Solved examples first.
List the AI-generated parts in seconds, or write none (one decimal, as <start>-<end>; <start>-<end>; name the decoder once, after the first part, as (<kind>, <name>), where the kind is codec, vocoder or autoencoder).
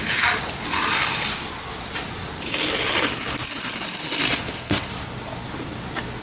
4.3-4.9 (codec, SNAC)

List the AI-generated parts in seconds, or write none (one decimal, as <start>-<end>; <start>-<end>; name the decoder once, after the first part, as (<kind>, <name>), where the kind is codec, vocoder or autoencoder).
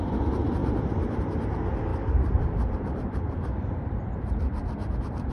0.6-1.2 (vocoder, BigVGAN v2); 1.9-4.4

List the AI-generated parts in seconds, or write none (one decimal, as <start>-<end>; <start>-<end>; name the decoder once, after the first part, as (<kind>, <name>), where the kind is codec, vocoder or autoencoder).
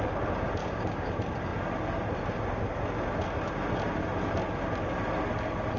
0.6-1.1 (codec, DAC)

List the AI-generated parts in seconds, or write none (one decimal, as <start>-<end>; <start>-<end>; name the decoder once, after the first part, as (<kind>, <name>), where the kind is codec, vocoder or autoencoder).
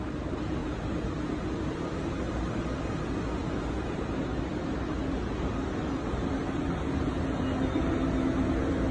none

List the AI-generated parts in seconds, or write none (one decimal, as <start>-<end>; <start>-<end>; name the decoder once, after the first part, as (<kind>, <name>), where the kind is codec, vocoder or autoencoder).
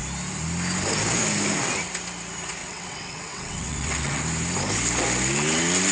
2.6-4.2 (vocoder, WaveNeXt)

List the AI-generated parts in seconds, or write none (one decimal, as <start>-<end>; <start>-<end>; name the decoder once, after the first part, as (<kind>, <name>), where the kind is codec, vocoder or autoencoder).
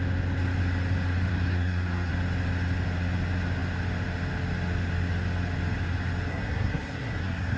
1.3-2.1 (codec, SNAC); 6.3-7.6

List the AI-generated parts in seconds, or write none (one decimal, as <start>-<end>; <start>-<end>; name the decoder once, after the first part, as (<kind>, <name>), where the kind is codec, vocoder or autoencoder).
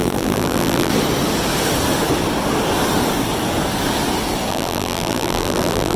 0.0-0.9 (vocoder, BigVGAN v2); 4.5-6.0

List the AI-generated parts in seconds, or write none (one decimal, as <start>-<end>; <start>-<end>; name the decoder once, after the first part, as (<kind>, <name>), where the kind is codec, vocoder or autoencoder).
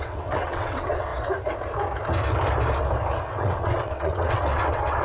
0.0-1.1 (vocoder, WaveNeXt); 3.2-5.0